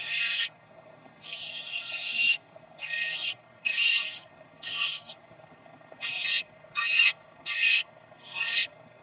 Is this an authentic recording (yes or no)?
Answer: no